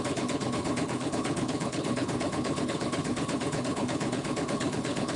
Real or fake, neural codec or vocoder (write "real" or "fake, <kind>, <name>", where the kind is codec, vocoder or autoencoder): fake, codec, HILCodec